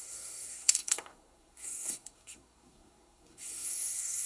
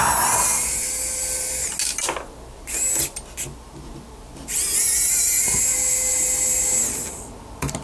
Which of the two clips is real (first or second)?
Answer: second